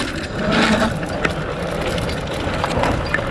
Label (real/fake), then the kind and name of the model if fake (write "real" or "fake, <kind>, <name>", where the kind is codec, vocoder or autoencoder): real